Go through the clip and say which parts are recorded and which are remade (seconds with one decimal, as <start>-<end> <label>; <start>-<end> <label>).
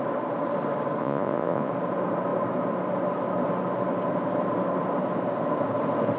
0.0-1.0 recorded; 1.0-1.7 remade; 1.7-6.2 recorded